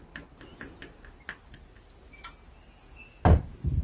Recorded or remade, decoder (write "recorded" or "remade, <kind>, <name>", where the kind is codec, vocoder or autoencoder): recorded